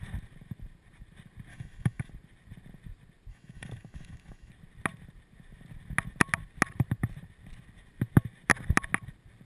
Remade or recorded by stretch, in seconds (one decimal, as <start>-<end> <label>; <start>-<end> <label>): 0.0-1.5 recorded; 1.5-2.1 remade; 2.1-3.3 recorded; 3.3-4.5 remade; 4.5-9.5 recorded